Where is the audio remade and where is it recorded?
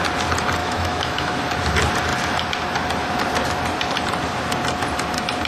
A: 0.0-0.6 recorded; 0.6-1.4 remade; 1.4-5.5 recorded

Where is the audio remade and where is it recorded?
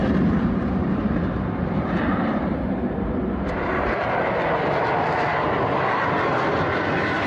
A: 0.0-4.4 remade; 4.4-7.3 recorded